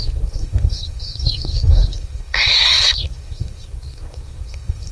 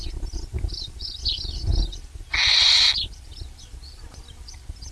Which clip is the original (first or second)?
second